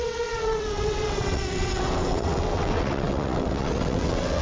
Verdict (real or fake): fake